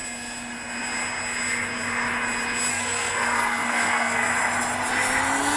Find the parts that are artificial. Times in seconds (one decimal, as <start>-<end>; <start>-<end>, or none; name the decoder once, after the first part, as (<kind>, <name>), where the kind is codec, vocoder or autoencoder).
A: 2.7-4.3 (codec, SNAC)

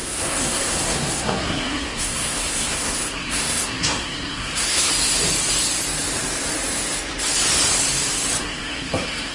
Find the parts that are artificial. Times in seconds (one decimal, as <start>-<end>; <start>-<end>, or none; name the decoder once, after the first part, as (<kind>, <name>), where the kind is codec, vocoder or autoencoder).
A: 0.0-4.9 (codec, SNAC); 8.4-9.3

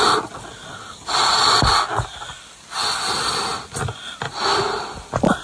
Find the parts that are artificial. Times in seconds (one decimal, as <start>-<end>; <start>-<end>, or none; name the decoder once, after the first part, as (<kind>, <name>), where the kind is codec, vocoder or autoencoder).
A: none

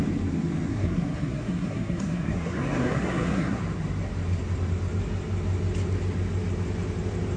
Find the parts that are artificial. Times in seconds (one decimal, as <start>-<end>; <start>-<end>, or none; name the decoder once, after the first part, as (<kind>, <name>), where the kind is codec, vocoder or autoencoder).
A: 0.7-3.6 (codec, SNAC)